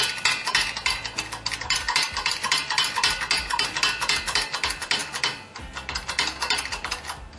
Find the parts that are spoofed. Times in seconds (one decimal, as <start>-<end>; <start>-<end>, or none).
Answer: none